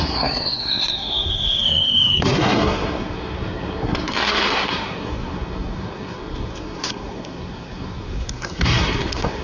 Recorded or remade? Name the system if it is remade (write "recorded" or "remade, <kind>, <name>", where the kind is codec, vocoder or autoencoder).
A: remade, codec, SNAC